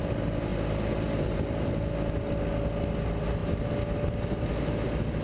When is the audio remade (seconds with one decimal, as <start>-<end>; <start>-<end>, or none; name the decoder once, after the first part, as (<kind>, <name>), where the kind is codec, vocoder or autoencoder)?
none